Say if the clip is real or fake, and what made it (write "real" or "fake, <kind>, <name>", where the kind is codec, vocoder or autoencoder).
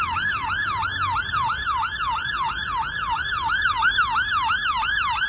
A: real